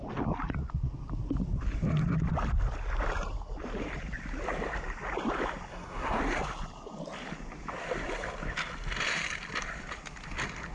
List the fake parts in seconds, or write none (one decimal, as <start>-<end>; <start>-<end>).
5.7-6.2